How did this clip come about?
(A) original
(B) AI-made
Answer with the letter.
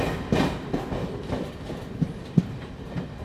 A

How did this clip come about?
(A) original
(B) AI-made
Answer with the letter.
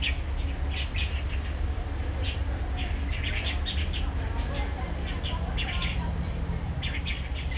A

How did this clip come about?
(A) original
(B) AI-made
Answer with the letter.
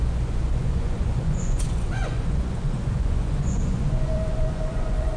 B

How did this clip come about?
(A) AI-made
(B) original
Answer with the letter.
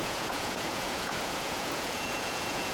A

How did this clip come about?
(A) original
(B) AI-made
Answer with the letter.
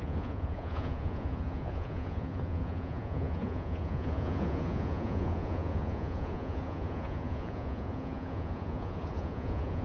B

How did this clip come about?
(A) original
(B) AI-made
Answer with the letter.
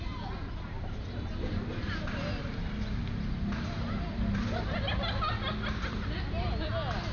A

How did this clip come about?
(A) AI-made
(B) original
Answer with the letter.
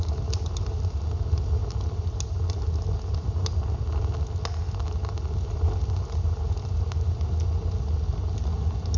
B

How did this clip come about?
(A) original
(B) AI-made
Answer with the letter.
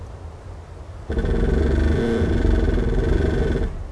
A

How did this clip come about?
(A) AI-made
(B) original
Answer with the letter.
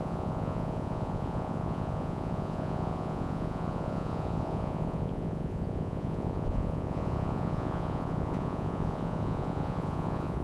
A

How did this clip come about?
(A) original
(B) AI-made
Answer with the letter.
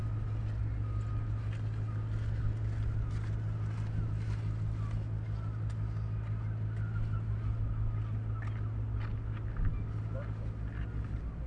A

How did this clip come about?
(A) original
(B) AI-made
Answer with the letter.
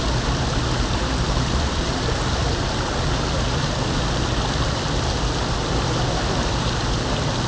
A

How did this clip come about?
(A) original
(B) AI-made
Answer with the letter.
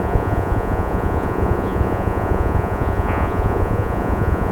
B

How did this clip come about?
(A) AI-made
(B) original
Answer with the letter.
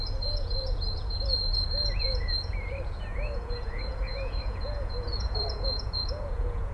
A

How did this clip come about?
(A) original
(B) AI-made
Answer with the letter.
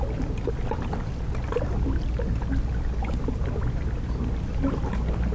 A